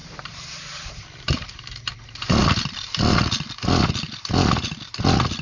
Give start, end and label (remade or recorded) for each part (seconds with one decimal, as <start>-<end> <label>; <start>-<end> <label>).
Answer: 0.0-1.9 remade; 1.9-5.4 recorded